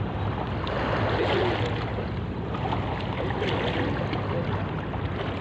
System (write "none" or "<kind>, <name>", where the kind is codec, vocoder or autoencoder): none